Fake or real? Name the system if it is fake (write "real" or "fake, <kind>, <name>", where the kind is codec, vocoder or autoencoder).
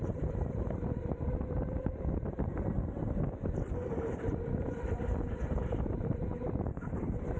fake, vocoder, BigVGAN v2